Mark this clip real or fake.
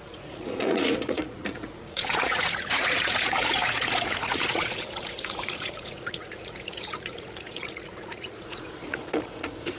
fake